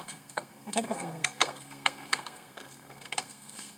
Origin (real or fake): fake